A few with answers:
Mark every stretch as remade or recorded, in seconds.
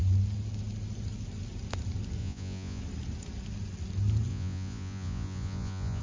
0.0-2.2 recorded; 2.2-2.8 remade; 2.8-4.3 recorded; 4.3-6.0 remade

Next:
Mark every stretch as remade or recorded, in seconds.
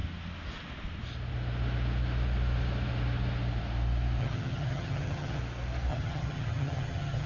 0.0-4.2 recorded; 4.2-5.4 remade; 5.4-5.9 recorded; 5.9-7.3 remade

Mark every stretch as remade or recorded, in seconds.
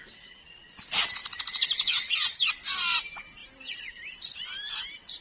0.0-1.2 recorded; 1.2-2.5 remade; 2.5-3.4 recorded; 3.4-4.8 remade; 4.8-5.2 recorded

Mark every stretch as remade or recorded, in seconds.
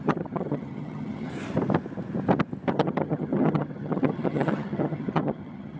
0.0-1.3 remade; 1.3-2.7 recorded; 2.7-5.8 remade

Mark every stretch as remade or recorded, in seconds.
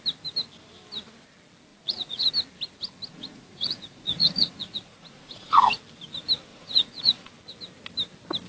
0.0-1.7 recorded; 1.7-2.3 remade; 2.3-3.1 recorded; 3.1-5.8 remade; 5.8-6.5 recorded; 6.5-7.3 remade; 7.3-8.5 recorded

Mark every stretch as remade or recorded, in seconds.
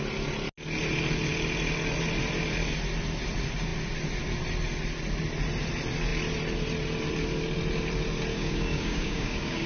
0.0-8.3 recorded; 8.3-9.7 remade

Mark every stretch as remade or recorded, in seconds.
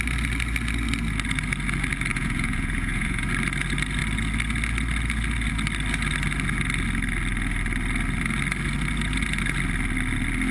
0.0-2.1 recorded; 2.1-3.3 remade; 3.3-10.5 recorded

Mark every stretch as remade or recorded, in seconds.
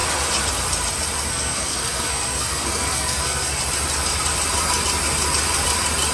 0.0-1.3 recorded; 1.3-3.6 remade; 3.6-6.1 recorded